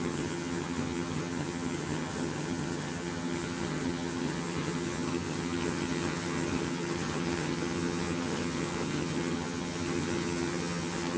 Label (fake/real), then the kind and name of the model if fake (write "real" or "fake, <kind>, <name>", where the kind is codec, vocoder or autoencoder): fake, vocoder, HiFi-GAN